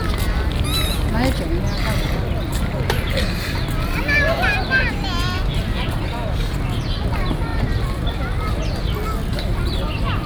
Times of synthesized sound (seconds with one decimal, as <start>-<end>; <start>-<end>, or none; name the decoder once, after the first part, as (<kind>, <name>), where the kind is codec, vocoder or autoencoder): 7.5-8.5 (vocoder, BigVGAN v2)